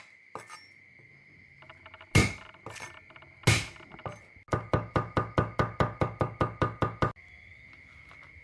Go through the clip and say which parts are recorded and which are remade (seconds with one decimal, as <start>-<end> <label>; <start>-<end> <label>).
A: 0.0-8.4 recorded